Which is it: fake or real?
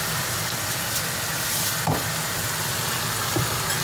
real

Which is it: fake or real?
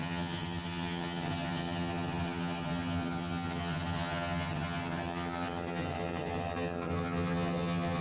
fake